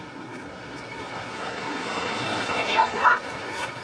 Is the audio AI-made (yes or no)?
yes